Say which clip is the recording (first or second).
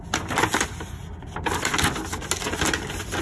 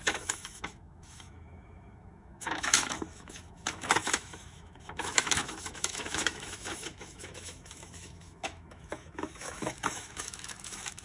first